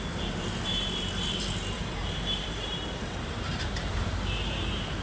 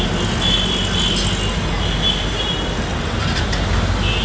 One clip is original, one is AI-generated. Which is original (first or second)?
second